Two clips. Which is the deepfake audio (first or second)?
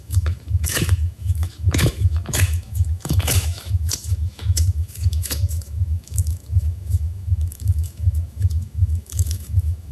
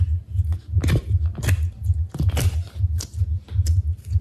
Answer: first